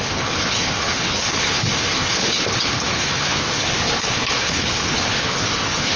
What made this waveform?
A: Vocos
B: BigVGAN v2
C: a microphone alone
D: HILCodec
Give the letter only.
D